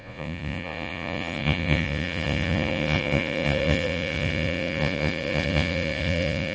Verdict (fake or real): fake